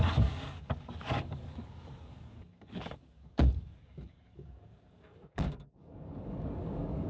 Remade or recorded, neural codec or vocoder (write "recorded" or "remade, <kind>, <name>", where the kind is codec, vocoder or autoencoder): remade, codec, DAC